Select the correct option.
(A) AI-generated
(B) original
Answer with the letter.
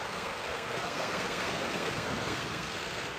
A